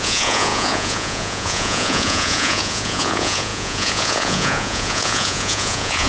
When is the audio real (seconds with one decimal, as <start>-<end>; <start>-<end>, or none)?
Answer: none